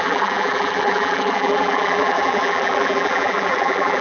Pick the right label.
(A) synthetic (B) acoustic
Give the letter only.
A